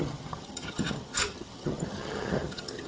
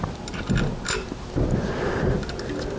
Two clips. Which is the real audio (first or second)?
second